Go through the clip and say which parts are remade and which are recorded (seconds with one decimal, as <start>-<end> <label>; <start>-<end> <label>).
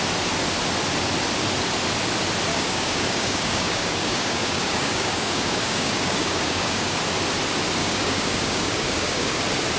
0.0-2.5 recorded; 2.5-7.0 remade; 7.0-7.8 recorded; 7.8-9.4 remade; 9.4-9.8 recorded